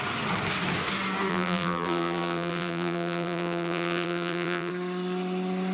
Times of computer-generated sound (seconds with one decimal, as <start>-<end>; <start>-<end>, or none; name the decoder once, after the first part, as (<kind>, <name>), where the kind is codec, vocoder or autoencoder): 1.3-4.7 (vocoder, BigVGAN v2)

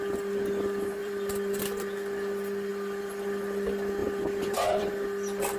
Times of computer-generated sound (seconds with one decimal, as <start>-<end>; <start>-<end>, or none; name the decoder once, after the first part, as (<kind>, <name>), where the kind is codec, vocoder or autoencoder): 1.0-1.6 (vocoder, BigVGAN v2); 2.7-3.2; 4.0-4.9